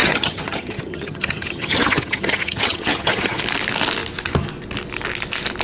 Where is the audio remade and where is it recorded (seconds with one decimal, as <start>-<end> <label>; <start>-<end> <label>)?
0.0-3.4 remade; 3.4-5.6 recorded